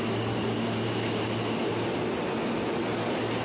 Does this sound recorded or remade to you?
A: recorded